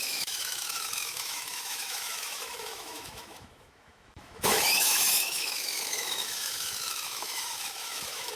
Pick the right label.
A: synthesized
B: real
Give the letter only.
A